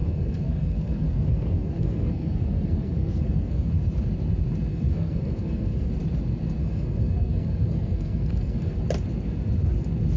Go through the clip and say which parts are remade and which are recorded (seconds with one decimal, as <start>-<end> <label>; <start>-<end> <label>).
0.0-3.7 remade; 3.7-4.7 recorded; 4.7-5.9 remade; 5.9-6.6 recorded; 6.6-8.8 remade; 8.8-10.2 recorded